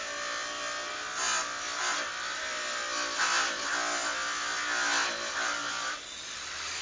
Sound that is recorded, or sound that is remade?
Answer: recorded